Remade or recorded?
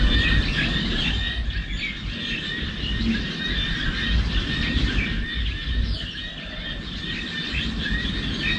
recorded